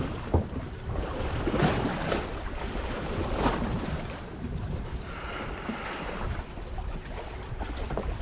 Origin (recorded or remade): remade